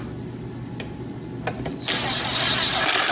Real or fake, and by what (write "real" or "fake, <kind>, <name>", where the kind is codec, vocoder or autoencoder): real